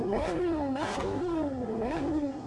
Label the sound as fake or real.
fake